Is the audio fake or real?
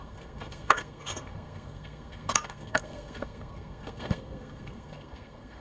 fake